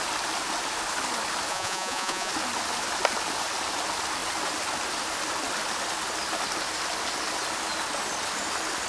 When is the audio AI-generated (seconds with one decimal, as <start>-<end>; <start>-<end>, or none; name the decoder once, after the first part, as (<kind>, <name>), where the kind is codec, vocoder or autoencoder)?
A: 1.5-2.3 (vocoder, Vocos)